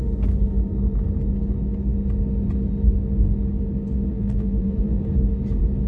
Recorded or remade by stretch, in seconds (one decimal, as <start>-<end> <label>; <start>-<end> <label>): 0.0-4.1 recorded; 4.1-5.0 remade; 5.0-5.9 recorded